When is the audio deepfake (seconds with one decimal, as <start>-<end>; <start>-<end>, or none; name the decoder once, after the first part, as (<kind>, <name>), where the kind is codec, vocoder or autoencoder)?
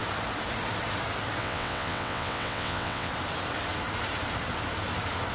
1.4-3.1 (vocoder, WaveNeXt)